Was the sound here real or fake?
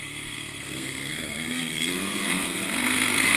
fake